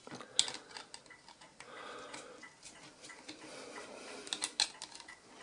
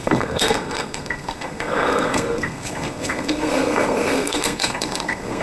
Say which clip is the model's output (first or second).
second